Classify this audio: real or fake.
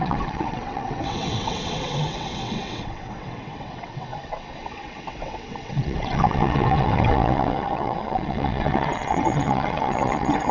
fake